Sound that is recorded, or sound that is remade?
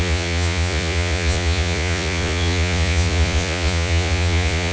remade